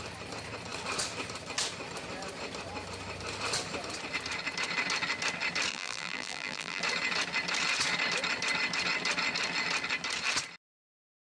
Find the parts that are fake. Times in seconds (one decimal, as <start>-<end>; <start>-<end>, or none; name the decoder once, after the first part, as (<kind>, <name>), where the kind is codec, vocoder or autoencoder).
5.7-6.8 (vocoder, BigVGAN v2)